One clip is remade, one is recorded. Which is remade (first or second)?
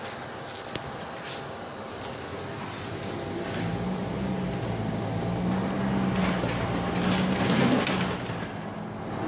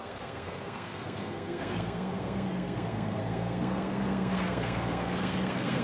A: second